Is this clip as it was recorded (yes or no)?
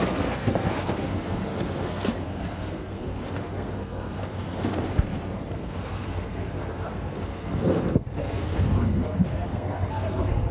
no